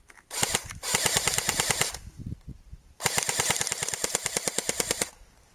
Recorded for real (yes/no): no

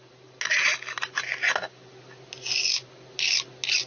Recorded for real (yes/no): yes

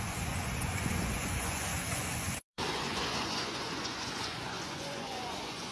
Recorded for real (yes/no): no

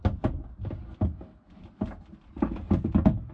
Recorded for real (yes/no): yes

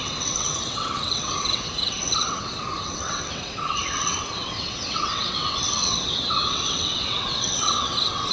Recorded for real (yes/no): no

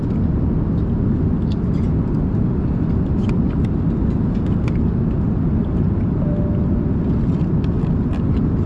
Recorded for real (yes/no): yes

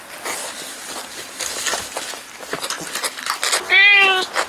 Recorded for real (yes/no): yes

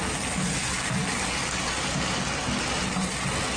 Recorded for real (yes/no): yes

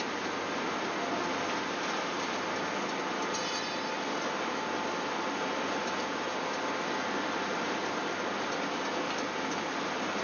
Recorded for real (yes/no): yes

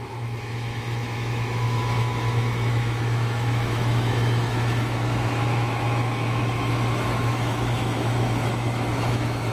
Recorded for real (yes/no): no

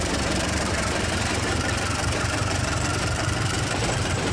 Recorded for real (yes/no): no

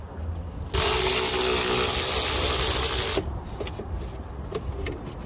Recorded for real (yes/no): yes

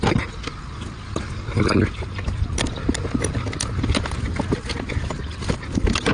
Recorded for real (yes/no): yes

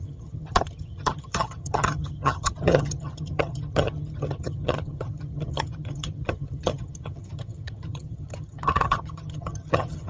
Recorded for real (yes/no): no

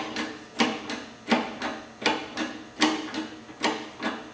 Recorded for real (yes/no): yes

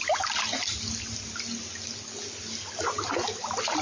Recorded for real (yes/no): yes